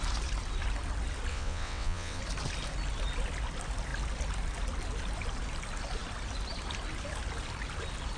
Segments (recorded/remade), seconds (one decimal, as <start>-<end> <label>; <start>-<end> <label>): 0.0-1.3 recorded; 1.3-2.2 remade; 2.2-8.2 recorded